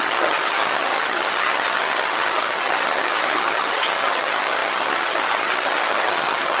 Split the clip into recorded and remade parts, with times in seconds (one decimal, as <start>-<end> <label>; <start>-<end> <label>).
0.0-6.6 remade